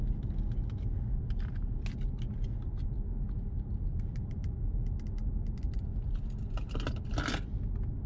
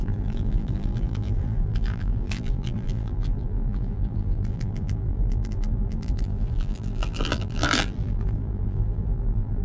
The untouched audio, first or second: first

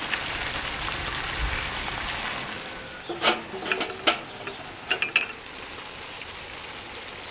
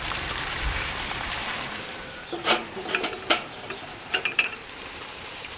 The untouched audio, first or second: first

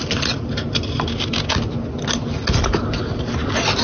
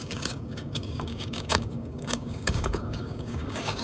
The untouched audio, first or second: first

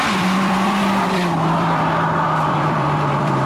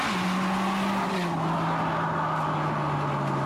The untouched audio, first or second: second